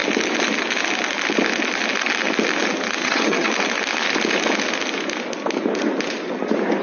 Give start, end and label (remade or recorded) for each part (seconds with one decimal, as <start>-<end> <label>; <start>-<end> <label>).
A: 0.0-3.0 recorded; 3.0-3.5 remade; 3.5-6.8 recorded